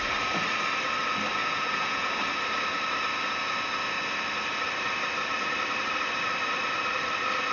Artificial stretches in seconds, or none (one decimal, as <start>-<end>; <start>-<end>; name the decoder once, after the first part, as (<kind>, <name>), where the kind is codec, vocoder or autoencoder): 1.4-2.1 (vocoder, Vocos)